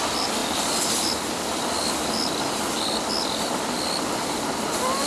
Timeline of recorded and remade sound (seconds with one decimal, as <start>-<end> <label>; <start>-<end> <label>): 0.0-5.1 recorded